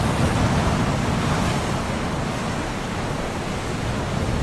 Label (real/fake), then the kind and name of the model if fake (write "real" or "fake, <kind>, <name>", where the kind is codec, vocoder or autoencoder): real